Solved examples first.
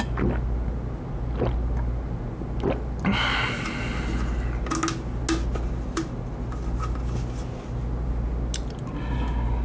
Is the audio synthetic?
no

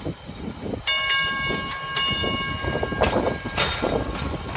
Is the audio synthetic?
no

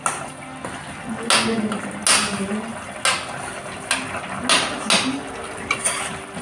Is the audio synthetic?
no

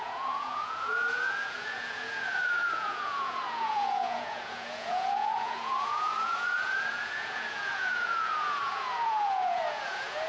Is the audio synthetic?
yes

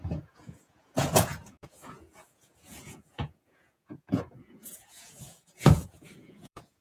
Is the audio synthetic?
yes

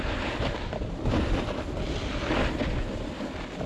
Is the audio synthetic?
no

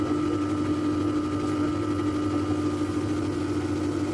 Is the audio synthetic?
no